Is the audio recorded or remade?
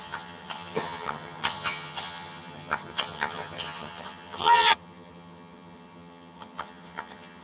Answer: remade